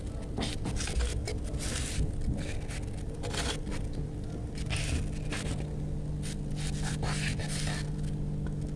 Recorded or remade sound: recorded